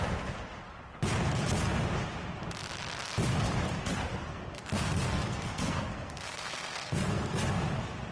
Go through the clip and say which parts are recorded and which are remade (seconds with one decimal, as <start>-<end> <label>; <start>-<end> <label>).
0.0-3.9 recorded; 3.9-7.4 remade; 7.4-8.1 recorded